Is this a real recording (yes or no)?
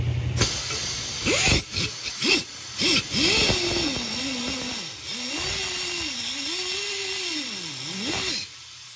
yes